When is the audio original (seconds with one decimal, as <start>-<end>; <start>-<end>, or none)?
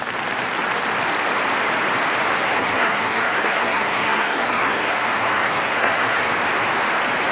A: 0.0-2.3; 6.2-7.3